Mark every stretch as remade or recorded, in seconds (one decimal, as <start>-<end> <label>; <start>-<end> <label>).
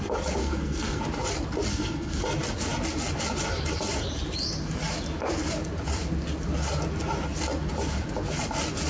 0.0-0.4 recorded; 0.4-1.0 remade; 1.0-1.7 recorded; 1.7-2.2 remade; 2.2-8.9 recorded